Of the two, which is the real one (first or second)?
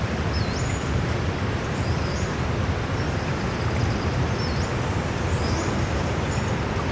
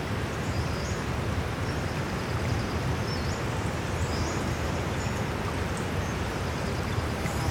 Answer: first